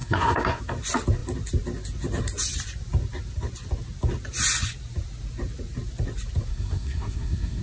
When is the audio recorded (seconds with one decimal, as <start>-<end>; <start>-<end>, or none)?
0.6-6.5